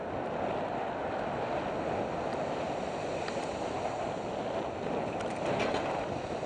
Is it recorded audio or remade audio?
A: recorded